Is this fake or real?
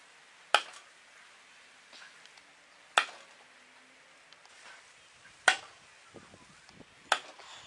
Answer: real